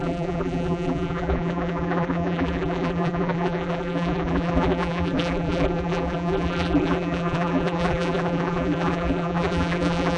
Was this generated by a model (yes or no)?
yes